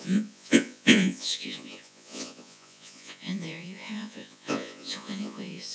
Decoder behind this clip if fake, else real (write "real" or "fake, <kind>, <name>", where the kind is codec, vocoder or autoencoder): fake, vocoder, Vocos